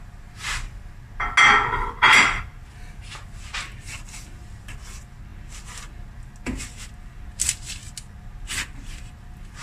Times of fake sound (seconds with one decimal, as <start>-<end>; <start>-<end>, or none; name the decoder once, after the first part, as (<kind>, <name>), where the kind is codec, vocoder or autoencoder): none